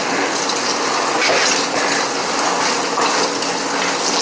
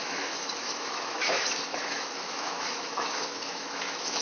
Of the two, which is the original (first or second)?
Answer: first